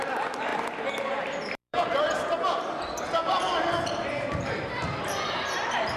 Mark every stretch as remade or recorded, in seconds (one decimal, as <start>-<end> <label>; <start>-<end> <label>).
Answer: 0.0-6.0 remade